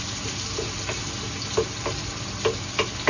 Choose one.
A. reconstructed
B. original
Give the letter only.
B